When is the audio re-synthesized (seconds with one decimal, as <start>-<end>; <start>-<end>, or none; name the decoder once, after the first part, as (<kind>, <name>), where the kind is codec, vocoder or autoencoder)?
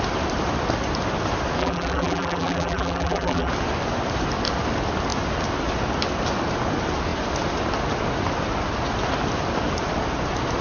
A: 1.6-3.5 (vocoder, BigVGAN v2)